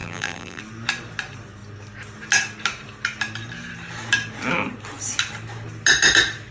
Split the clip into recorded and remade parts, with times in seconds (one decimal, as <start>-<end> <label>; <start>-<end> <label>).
0.0-0.6 remade; 0.6-6.5 recorded